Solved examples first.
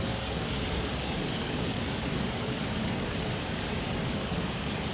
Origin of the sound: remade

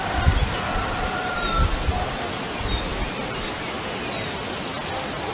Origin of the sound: recorded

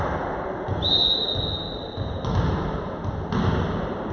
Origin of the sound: recorded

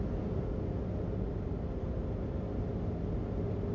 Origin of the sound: recorded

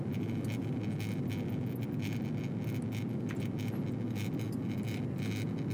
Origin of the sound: recorded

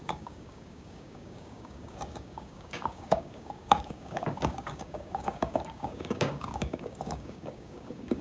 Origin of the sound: remade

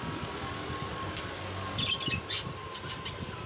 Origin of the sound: recorded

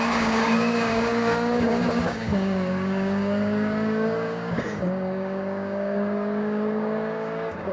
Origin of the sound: remade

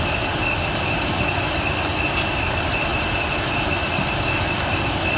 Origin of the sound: recorded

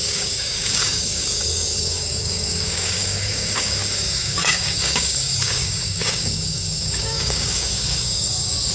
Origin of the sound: remade